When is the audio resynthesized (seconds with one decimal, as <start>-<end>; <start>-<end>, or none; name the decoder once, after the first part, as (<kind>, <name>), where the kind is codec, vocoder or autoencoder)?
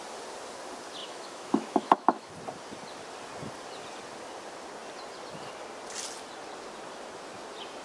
1.0-2.3 (autoencoder, DAC-VAE)